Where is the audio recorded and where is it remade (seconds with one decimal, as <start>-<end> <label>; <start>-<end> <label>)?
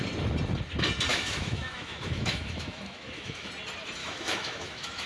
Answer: 0.0-1.1 recorded; 1.1-3.5 remade; 3.5-4.0 recorded; 4.0-5.1 remade